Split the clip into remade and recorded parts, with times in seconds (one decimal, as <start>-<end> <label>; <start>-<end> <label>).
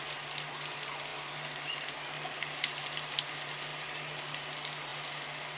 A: 0.0-5.6 recorded